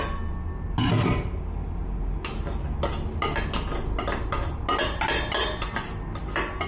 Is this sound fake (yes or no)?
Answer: no